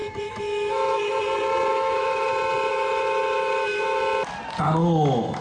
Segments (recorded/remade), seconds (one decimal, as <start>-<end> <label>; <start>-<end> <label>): 0.0-1.2 remade; 1.2-1.7 recorded; 1.7-2.3 remade; 2.3-2.7 recorded; 2.7-4.0 remade; 4.0-4.8 recorded; 4.8-5.4 remade